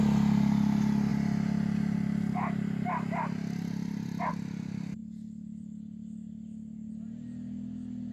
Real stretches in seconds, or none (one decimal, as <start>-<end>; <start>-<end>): 0.0-8.1